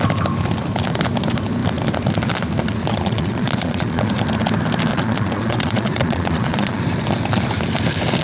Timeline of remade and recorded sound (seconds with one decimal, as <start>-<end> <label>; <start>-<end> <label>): 0.0-2.8 recorded; 2.8-4.1 remade; 4.1-4.9 recorded; 4.9-6.8 remade; 6.8-8.2 recorded